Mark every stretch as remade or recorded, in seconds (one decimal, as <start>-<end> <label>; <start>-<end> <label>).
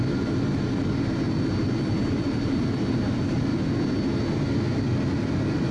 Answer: 0.0-5.7 recorded